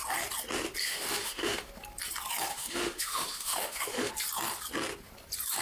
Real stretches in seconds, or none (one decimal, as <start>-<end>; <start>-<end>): 0.0-0.8; 1.7-2.5; 4.1-5.6